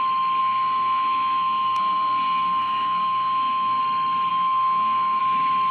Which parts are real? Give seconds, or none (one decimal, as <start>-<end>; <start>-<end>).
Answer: 0.0-0.4; 3.8-4.3; 5.2-5.7